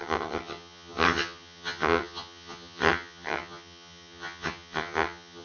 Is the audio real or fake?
fake